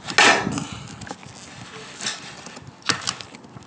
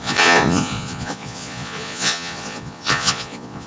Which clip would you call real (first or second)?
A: first